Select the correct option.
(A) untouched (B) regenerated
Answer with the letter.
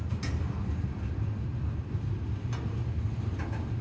A